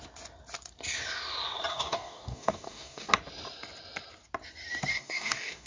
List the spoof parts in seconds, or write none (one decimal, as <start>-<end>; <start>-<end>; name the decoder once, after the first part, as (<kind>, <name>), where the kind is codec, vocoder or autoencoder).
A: 1.7-3.1 (codec, DAC); 4.9-5.7